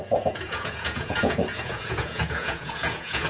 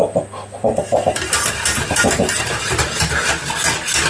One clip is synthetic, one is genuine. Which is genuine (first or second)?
second